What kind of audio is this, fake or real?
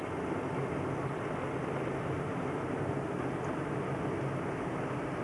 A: real